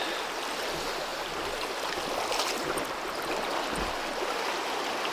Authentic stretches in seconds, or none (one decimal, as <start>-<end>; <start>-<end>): 0.0-5.1